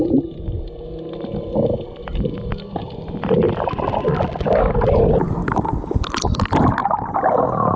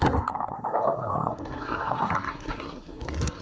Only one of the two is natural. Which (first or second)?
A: first